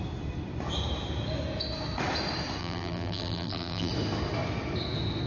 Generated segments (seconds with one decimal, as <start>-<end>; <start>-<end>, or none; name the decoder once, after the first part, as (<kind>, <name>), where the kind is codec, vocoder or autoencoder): 2.6-3.9 (vocoder, BigVGAN v2)